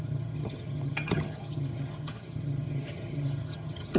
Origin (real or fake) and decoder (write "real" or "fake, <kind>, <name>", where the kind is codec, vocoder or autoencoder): fake, vocoder, HiFi-GAN